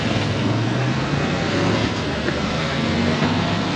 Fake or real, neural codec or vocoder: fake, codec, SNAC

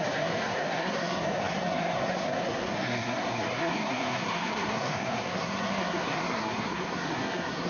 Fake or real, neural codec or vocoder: fake, codec, SNAC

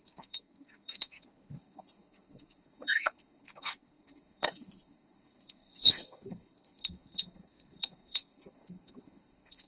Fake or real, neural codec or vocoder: fake, codec, SNAC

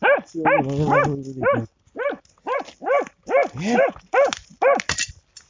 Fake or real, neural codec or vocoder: real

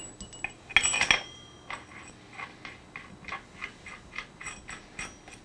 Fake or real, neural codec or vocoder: real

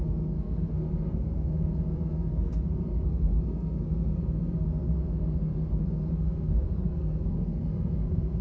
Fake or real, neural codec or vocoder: fake, codec, SNAC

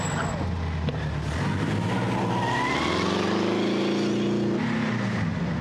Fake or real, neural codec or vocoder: real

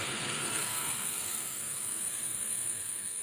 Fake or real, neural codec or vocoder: fake, codec, SNAC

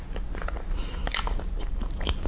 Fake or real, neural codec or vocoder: real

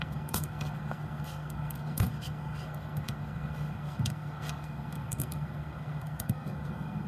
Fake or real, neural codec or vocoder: fake, codec, SNAC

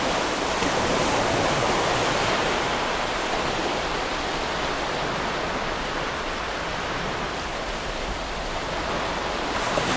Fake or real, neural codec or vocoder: real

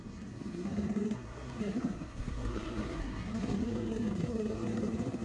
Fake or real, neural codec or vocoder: fake, codec, SNAC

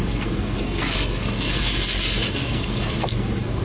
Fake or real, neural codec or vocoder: fake, codec, SNAC